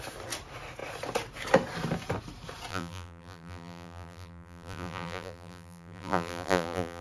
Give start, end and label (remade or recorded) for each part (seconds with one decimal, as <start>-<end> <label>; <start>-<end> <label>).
0.0-2.7 recorded; 2.7-7.0 remade

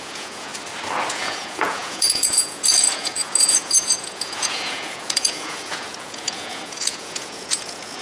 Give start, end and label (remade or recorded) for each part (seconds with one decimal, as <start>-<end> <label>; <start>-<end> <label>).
0.0-0.5 remade; 0.5-1.1 recorded; 1.1-8.0 remade